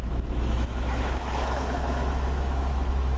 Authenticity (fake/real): fake